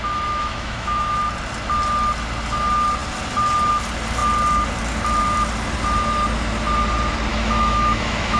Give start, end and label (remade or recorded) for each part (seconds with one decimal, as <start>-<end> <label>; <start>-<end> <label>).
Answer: 0.0-0.4 recorded; 0.4-1.2 remade; 1.2-7.3 recorded; 7.3-8.4 remade